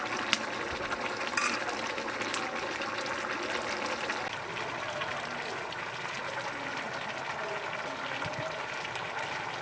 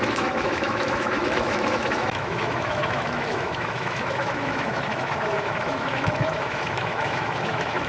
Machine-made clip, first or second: second